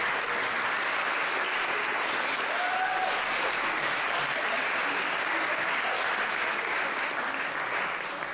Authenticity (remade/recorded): recorded